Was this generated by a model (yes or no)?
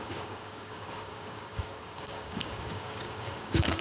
yes